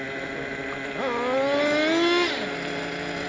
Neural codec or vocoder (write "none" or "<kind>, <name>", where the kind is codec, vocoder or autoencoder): none